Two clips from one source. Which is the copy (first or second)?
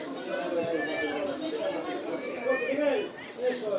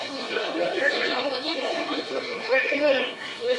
second